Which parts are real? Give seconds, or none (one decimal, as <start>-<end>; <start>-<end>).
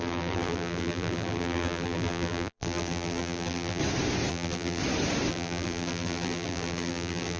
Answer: 3.8-4.3; 4.8-5.3